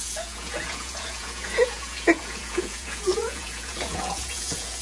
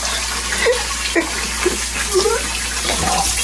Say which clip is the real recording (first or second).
second